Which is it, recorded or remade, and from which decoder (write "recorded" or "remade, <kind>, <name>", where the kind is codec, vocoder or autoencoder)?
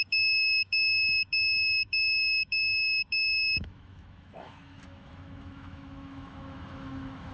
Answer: remade, autoencoder, DAC-VAE